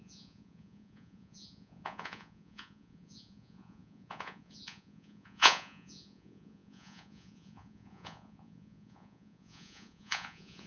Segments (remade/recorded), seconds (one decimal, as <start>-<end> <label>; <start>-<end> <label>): 0.0-10.7 remade